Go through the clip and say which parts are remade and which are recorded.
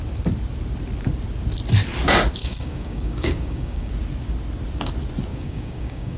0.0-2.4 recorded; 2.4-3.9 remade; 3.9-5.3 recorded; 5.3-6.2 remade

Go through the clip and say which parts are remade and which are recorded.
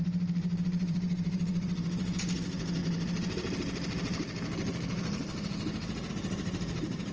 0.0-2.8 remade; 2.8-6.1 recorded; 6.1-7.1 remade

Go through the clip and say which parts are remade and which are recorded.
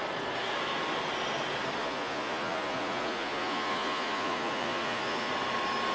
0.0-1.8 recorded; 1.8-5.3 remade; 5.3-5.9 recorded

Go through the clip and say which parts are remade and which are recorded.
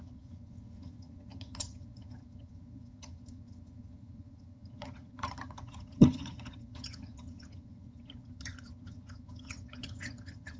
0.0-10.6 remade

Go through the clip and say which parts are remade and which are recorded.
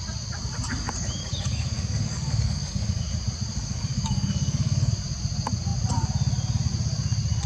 0.0-1.2 recorded; 1.2-3.0 remade; 3.0-3.5 recorded; 3.5-4.9 remade; 4.9-7.5 recorded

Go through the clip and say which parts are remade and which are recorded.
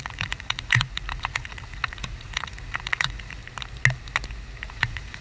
0.0-3.4 remade; 3.4-4.7 recorded; 4.7-5.2 remade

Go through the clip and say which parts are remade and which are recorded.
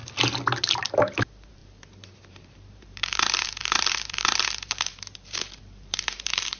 0.0-1.2 recorded; 1.2-6.6 remade